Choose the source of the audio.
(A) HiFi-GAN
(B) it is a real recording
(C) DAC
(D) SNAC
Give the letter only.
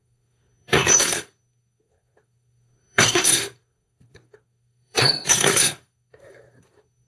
D